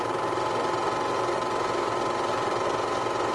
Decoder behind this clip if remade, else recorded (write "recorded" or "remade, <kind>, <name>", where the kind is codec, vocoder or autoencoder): recorded